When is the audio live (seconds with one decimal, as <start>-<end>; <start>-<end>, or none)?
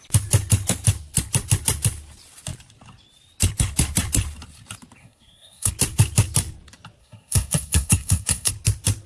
0.0-5.0; 5.7-7.0; 8.5-9.1